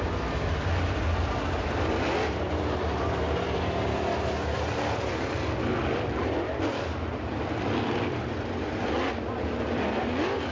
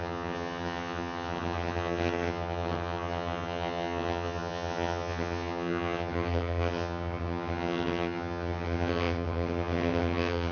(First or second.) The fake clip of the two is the second